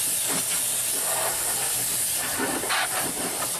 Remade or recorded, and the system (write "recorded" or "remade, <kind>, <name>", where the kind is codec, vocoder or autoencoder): recorded